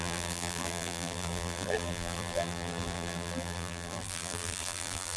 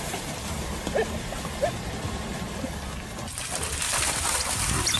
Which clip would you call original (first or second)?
second